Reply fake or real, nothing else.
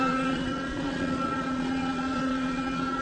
fake